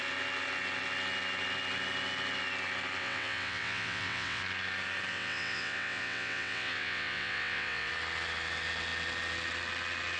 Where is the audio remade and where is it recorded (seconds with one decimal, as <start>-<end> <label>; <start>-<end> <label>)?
0.0-3.0 recorded; 3.0-4.4 remade; 4.4-5.1 recorded; 5.1-7.9 remade; 7.9-10.2 recorded